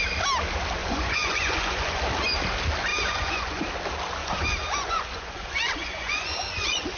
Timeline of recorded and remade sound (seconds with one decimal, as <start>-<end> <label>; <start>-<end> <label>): 0.0-0.8 recorded; 0.8-2.0 remade; 2.0-2.9 recorded; 2.9-3.6 remade; 3.6-4.2 recorded; 4.2-7.0 remade